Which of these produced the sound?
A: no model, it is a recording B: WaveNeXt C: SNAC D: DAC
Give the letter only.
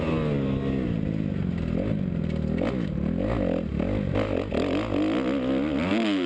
A